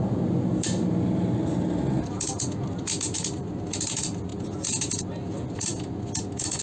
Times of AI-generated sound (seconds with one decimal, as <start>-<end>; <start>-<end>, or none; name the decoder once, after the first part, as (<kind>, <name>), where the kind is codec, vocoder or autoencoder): none